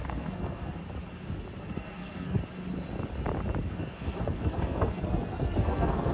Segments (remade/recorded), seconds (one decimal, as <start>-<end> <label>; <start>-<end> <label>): 0.0-0.8 remade; 0.8-1.6 recorded; 1.6-2.4 remade; 2.4-3.7 recorded; 3.7-6.1 remade